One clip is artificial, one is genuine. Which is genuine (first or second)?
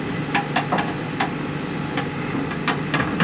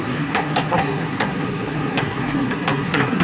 first